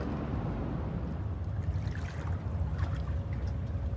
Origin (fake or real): real